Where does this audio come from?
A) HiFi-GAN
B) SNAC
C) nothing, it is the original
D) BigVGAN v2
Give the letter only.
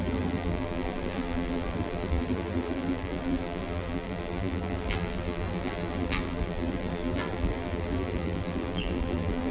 D